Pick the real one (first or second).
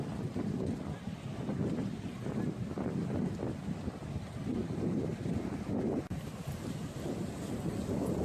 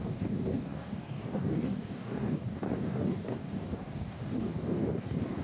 first